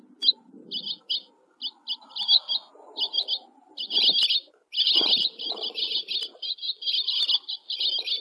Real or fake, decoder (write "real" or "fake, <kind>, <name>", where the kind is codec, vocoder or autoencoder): real